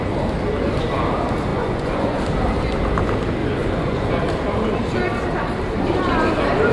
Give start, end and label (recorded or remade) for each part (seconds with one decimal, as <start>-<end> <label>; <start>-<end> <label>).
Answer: 0.0-1.5 recorded; 1.5-2.2 remade; 2.2-3.4 recorded; 3.4-4.1 remade; 4.1-6.7 recorded